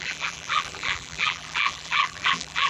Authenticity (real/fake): fake